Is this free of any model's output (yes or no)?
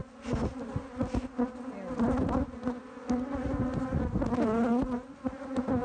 yes